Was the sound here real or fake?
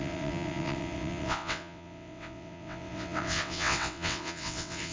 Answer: fake